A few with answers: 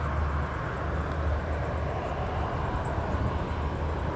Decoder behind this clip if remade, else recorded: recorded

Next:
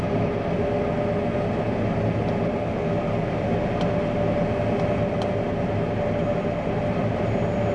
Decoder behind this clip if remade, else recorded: recorded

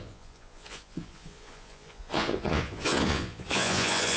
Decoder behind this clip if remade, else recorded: remade, vocoder, Vocos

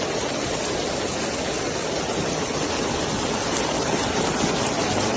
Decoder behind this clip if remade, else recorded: recorded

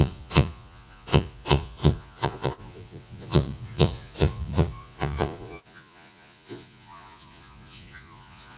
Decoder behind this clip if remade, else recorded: remade, vocoder, Vocos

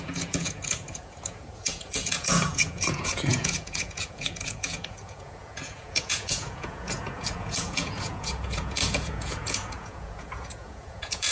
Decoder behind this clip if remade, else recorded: remade, vocoder, Vocos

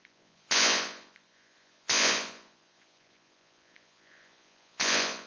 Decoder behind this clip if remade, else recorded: remade, vocoder, Vocos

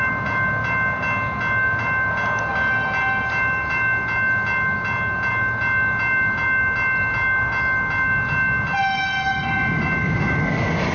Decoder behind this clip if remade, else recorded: recorded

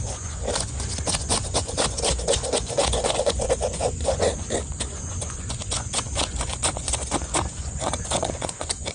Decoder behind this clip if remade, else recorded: remade, vocoder, Vocos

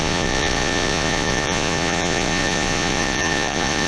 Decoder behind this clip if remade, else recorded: remade, vocoder, Vocos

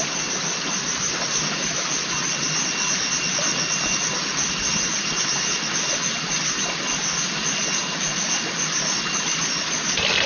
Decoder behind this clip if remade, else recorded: recorded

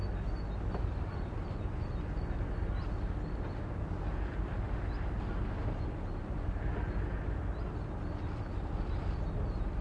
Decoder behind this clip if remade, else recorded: recorded